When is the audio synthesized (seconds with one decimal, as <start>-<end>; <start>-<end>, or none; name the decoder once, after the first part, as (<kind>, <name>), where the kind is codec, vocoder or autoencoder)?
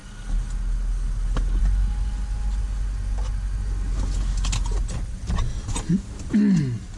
none